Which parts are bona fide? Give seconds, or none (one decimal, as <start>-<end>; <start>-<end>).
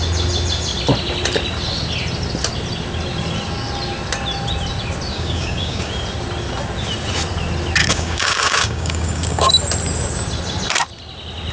0.0-5.1; 5.9-7.8; 9.5-11.5